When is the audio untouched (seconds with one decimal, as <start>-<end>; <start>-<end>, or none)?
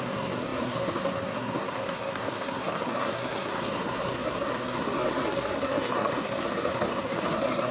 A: none